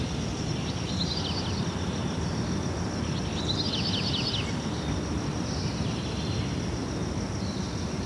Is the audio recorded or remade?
recorded